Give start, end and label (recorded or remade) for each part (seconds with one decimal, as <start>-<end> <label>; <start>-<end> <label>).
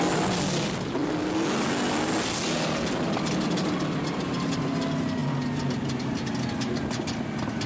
0.0-7.7 recorded